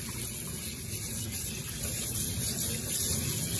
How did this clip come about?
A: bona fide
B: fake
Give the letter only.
A